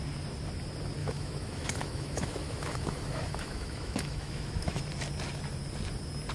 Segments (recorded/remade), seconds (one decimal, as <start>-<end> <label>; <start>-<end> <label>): 0.0-1.0 recorded; 1.0-4.8 remade; 4.8-6.3 recorded